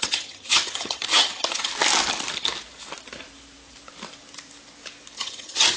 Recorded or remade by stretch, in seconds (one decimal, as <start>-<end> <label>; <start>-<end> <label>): 0.0-1.7 remade; 1.7-5.2 recorded; 5.2-5.8 remade